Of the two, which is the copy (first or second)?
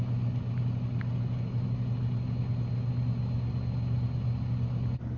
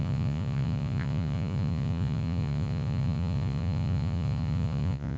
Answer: second